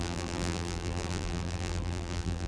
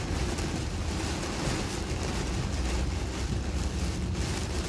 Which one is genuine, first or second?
second